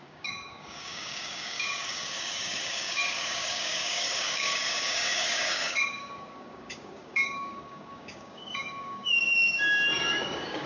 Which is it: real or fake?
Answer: fake